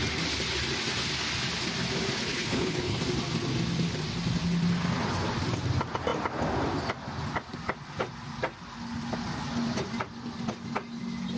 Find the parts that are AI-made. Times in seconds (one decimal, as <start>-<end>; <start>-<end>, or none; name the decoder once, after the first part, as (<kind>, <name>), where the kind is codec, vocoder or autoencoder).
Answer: 2.2-3.0 (codec, HILCodec)